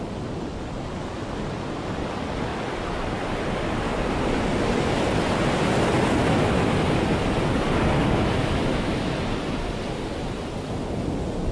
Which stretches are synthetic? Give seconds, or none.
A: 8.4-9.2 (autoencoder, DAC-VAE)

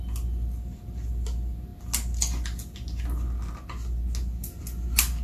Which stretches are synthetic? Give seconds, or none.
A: none